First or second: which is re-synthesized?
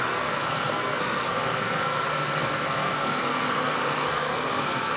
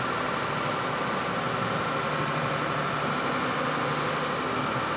first